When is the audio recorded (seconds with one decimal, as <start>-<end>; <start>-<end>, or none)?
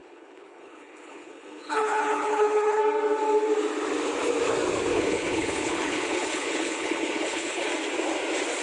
2.8-4.9; 7.7-8.6